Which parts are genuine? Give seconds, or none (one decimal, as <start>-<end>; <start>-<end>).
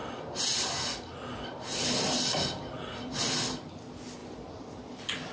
0.0-5.3